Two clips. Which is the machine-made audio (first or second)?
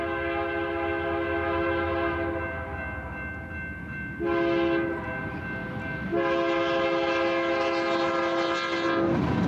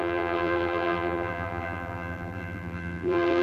second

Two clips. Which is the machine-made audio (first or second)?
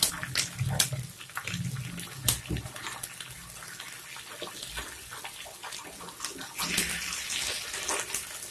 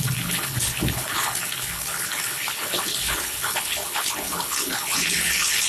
second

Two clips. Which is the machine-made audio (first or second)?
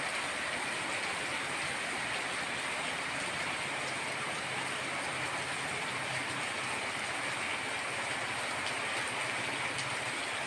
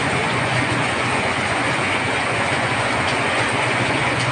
second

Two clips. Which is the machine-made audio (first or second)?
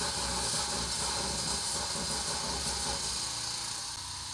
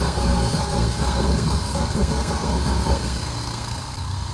second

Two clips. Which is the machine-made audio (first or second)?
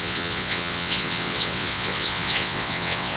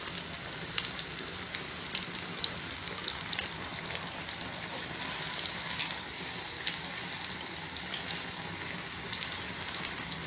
first